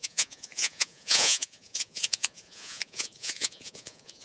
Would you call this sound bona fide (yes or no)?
no